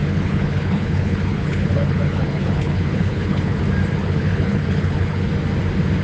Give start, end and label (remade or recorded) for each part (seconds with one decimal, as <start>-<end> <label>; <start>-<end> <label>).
0.0-3.6 remade; 3.6-4.0 recorded; 4.0-5.3 remade; 5.3-6.0 recorded